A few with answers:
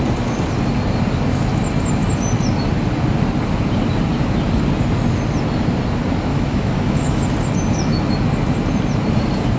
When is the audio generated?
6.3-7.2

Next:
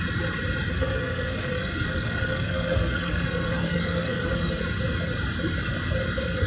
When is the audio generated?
0.7-4.6

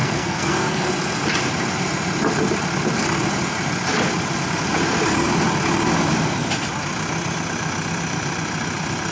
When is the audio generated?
0.0-0.9

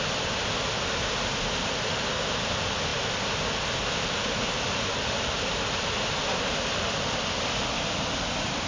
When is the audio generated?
none

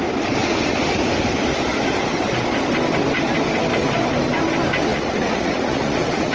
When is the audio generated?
4.9-6.3